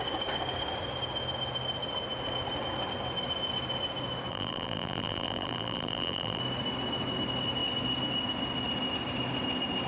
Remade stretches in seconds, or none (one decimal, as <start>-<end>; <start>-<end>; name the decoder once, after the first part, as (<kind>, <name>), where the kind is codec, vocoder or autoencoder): 4.3-6.4 (vocoder, BigVGAN v2)